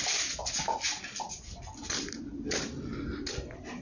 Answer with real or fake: real